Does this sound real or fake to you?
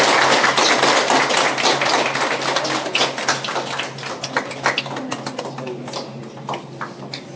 real